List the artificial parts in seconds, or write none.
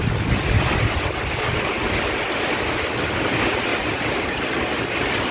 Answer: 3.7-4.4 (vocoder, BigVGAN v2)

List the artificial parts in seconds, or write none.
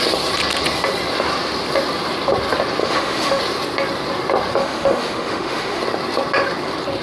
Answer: 2.8-3.4 (autoencoder, DAC-VAE); 4.6-5.8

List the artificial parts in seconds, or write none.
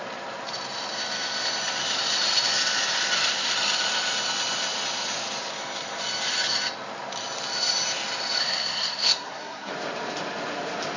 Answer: 8.4-9.7 (codec, SNAC)